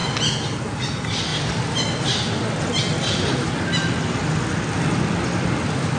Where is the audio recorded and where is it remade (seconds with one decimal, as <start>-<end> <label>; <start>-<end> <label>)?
0.0-6.0 recorded